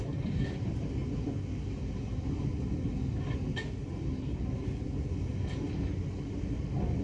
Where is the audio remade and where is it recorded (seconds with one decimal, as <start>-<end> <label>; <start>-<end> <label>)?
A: 0.0-7.0 recorded